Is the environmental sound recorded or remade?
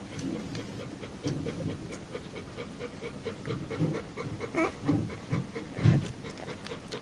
recorded